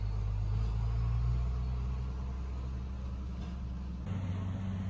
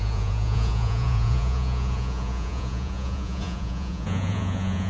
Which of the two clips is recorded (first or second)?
first